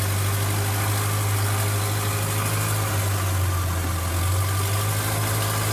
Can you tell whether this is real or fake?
real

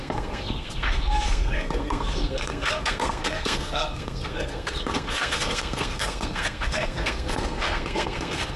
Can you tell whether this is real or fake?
fake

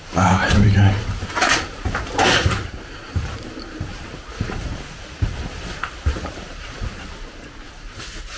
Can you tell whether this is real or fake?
fake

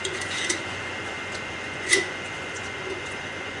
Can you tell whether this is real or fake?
fake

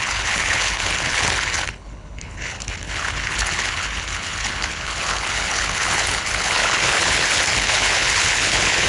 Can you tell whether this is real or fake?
fake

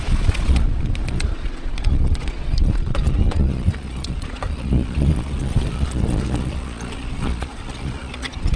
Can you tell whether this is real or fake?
fake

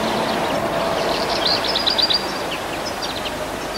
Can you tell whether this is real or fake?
real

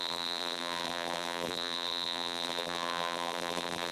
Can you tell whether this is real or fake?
fake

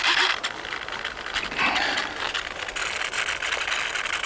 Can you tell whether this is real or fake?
real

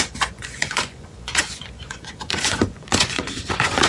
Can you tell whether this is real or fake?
fake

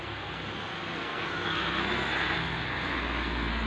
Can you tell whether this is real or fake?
fake